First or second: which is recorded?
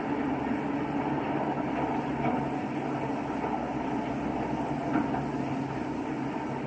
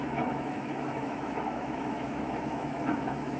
first